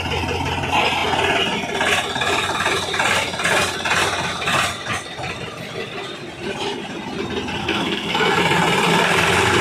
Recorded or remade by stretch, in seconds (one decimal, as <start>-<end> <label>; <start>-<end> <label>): 0.0-7.6 recorded; 7.6-8.4 remade; 8.4-9.6 recorded